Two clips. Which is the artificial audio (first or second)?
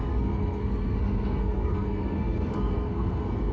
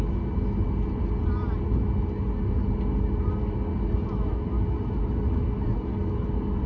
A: first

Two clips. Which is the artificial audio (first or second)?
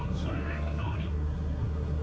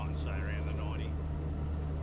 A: first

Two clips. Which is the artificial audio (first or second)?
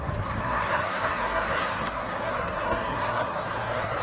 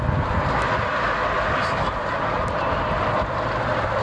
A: first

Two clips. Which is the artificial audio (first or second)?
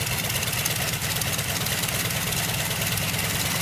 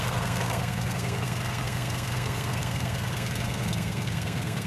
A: second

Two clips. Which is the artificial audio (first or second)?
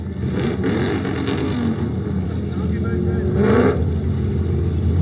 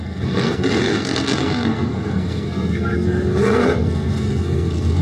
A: second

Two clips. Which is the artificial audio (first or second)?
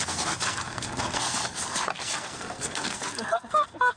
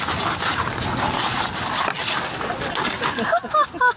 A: first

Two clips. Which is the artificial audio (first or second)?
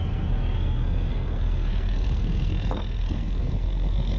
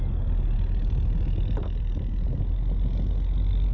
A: first